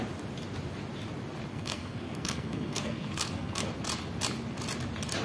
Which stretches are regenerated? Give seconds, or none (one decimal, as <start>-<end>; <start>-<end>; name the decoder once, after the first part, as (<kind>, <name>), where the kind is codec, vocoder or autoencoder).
1.5-3.7 (codec, SNAC)